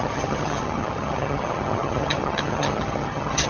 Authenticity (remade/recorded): remade